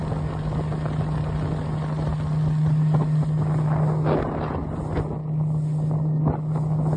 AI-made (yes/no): no